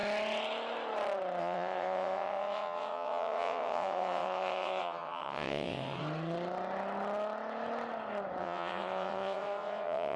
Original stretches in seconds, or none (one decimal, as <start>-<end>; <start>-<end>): 0.0-1.4; 6.0-8.4